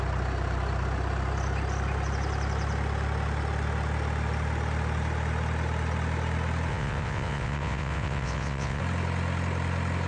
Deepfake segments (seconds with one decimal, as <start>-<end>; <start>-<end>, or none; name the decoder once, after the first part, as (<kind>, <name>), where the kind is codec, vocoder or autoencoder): 6.7-8.8 (vocoder, WaveNeXt)